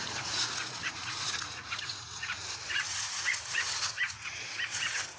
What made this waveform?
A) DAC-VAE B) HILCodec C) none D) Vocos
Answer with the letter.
D